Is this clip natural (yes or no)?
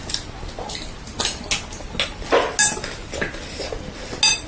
yes